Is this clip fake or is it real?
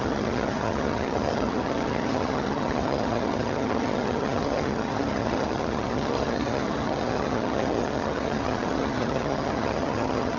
fake